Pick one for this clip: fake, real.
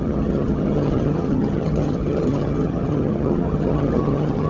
fake